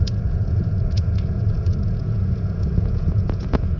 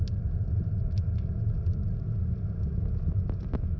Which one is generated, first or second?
first